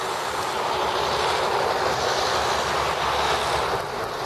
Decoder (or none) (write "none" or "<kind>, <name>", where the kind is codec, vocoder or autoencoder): none